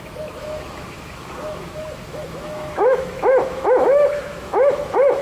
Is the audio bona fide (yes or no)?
no